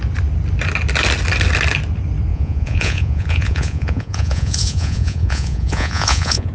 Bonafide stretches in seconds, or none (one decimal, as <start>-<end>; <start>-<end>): 0.0-2.3